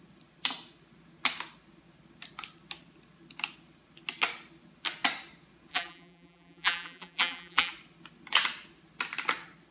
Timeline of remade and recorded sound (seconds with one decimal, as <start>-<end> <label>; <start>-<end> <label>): 0.0-5.7 recorded; 5.7-7.7 remade; 7.7-9.7 recorded